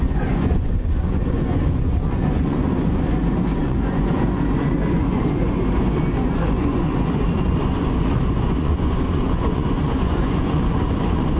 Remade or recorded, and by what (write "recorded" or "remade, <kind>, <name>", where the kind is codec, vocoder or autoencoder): remade, vocoder, Vocos